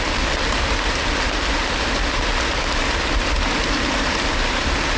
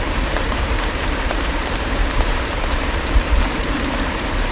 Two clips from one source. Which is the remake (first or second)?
second